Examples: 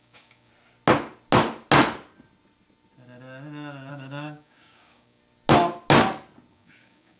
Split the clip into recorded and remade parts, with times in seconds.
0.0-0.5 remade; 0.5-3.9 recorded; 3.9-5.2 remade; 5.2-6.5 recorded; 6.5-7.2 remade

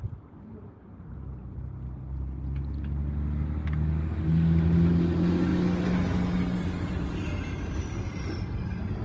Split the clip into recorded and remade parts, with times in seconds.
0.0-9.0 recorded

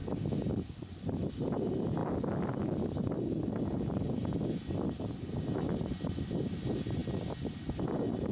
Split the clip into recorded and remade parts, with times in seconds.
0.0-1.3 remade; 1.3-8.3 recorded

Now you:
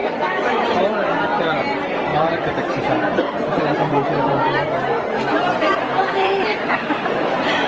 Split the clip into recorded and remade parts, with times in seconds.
0.0-7.7 remade

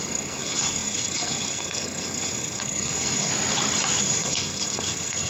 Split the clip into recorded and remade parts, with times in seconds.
0.0-3.3 remade; 3.3-4.0 recorded; 4.0-5.3 remade

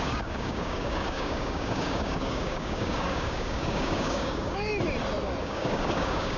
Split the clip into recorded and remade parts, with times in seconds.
0.0-4.7 remade; 4.7-5.4 recorded; 5.4-6.4 remade

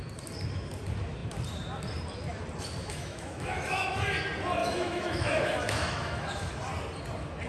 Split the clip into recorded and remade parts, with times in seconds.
0.0-2.8 recorded; 2.8-4.0 remade; 4.0-4.6 recorded; 4.6-6.5 remade; 6.5-7.5 recorded